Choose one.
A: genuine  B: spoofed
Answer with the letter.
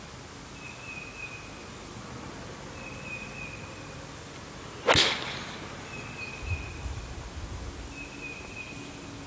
A